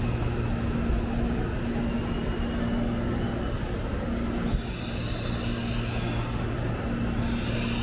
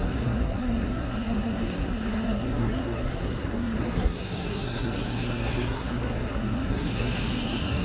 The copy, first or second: second